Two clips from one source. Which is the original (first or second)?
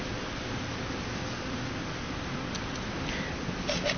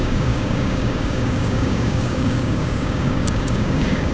first